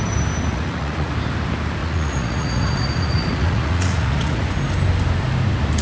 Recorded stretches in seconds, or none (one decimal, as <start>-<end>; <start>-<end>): 0.0-0.5; 1.1-1.8; 4.4-5.8